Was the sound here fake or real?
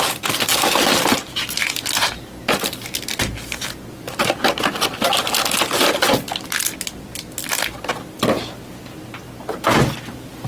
real